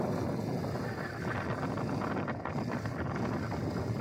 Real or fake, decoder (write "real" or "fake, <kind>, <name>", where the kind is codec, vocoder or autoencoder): real